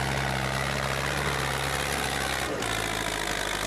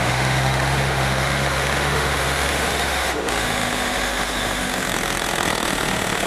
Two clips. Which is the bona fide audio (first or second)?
first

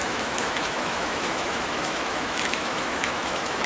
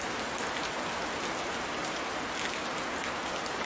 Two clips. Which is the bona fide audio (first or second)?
second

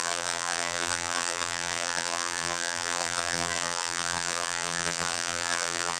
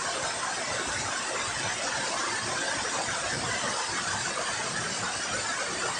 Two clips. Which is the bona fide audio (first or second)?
second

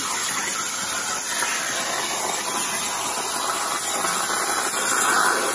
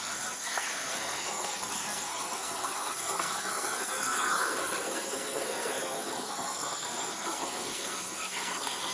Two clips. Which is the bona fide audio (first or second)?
first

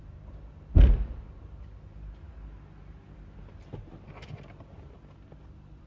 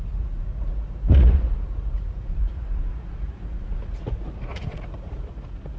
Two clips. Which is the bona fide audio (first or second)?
first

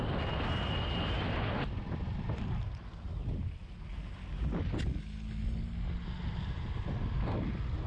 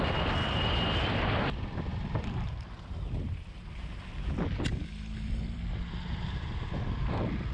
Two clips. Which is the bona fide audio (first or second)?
first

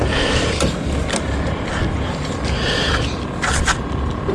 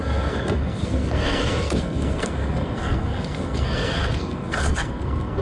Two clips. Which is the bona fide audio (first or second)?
first